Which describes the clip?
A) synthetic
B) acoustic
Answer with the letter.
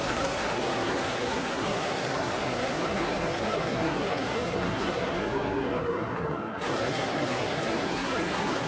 A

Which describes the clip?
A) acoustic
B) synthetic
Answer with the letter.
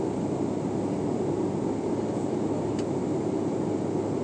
A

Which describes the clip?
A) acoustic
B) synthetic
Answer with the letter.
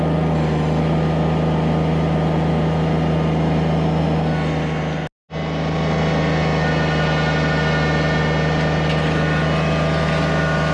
A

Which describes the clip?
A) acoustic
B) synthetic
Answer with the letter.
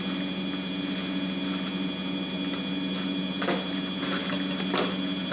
A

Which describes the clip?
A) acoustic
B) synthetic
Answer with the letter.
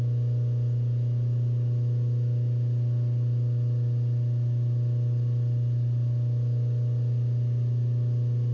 A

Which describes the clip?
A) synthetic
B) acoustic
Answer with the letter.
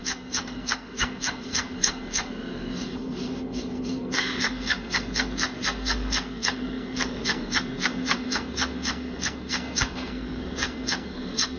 A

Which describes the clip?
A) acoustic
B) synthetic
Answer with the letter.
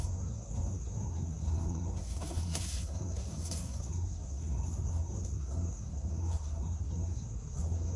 B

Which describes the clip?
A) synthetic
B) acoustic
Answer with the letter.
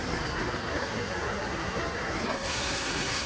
A